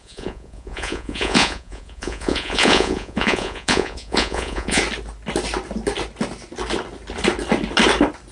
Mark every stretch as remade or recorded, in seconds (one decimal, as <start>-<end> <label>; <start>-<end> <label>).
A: 0.0-4.8 remade; 4.8-8.3 recorded